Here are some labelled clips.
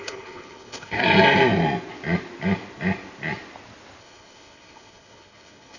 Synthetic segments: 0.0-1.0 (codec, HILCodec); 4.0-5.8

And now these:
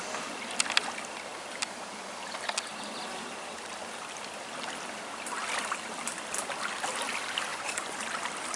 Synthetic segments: 7.5-8.0 (vocoder, Vocos)

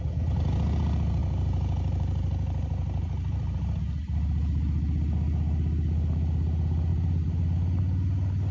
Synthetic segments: 1.2-3.8 (vocoder, BigVGAN v2); 6.9-7.8

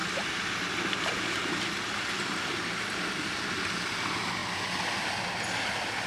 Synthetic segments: none

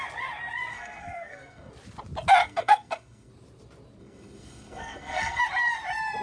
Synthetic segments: 0.7-1.7 (codec, SNAC); 2.4-3.3; 4.0-5.4

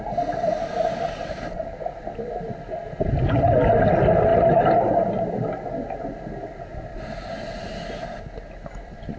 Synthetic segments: none